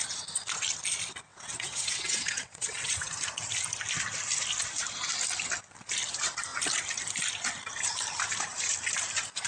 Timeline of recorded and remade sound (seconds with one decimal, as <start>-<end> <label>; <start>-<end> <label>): 0.0-1.3 recorded; 1.3-3.1 remade; 3.1-9.5 recorded